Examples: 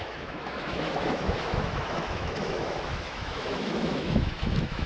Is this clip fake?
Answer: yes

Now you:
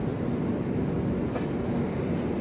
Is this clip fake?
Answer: no